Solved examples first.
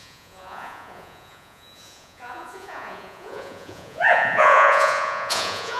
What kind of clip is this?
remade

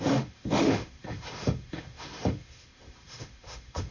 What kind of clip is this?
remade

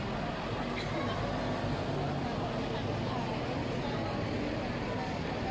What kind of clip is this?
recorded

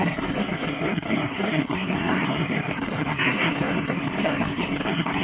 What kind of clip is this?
remade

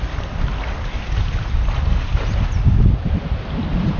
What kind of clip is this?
remade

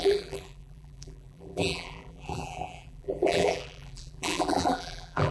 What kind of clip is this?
remade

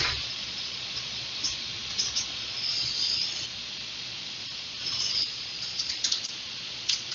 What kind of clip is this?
remade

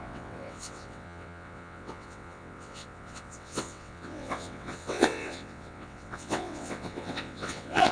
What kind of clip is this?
remade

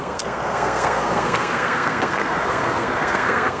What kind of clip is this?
remade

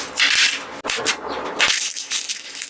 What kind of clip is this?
recorded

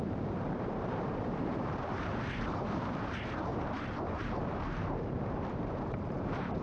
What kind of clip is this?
remade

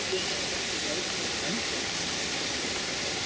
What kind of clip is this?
recorded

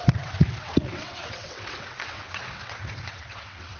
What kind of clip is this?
remade